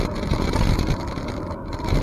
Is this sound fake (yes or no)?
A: no